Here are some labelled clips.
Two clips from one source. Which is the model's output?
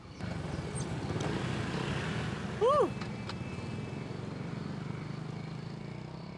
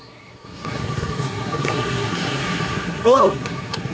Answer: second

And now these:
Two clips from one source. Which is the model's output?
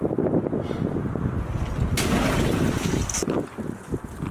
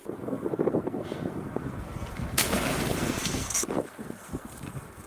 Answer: second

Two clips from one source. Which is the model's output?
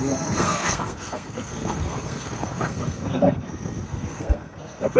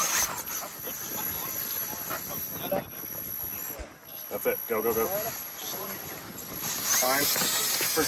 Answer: first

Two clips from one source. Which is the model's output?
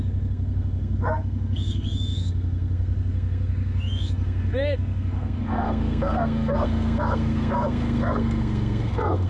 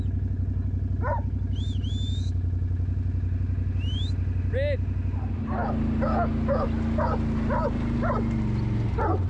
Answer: first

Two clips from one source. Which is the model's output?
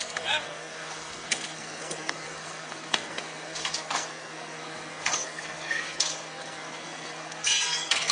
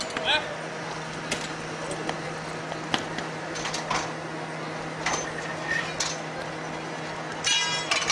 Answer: first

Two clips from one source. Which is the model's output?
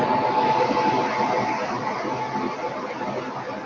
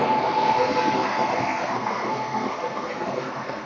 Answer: second